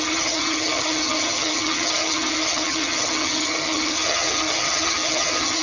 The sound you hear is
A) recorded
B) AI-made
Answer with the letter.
B